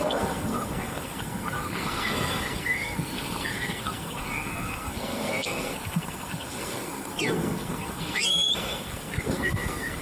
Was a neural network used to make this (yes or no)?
yes